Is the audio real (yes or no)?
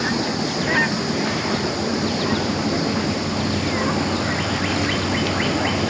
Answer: yes